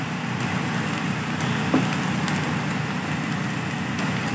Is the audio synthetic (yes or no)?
no